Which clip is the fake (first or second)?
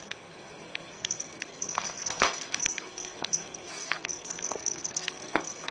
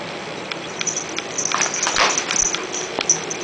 first